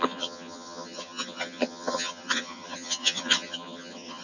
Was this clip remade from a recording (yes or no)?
yes